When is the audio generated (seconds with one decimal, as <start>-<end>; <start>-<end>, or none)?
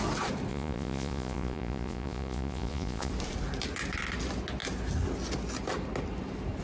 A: 0.5-3.1